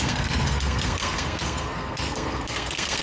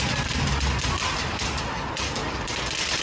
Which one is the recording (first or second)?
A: second